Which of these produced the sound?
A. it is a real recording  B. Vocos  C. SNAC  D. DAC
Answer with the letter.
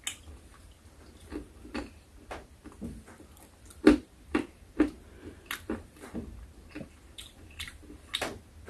A